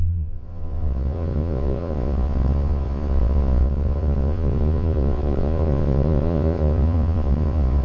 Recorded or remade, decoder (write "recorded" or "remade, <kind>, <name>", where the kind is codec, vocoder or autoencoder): remade, vocoder, Vocos